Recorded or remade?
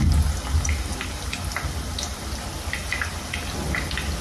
recorded